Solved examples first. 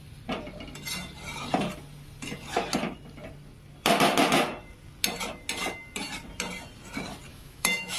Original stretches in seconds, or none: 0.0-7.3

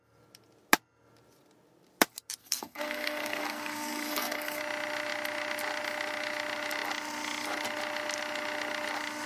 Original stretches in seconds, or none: 0.0-2.4; 4.6-9.3

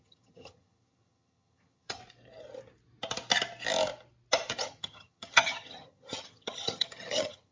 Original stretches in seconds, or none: 2.0-4.6

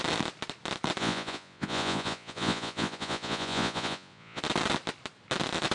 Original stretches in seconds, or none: 0.0-1.0; 4.4-5.7

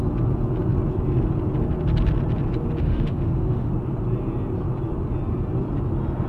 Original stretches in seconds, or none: 0.0-2.8; 3.7-6.3